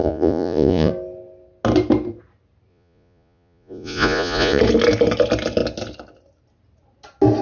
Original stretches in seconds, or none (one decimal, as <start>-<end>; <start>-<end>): 0.9-2.7; 4.6-7.4